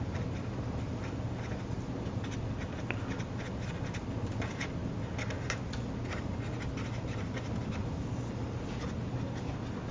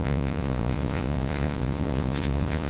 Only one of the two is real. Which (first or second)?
first